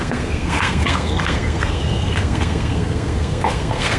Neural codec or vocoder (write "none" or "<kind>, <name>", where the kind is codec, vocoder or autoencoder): codec, SNAC